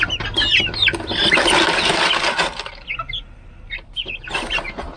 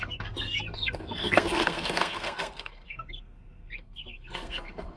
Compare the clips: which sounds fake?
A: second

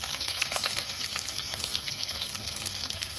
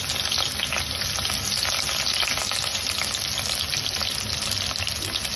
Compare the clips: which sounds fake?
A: first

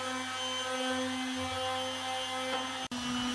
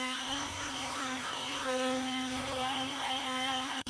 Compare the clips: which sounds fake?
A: second